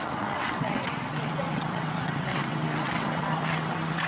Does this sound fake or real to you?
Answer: fake